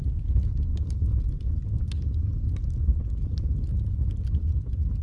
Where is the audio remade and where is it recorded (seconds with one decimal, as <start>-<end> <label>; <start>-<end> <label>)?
0.0-5.0 recorded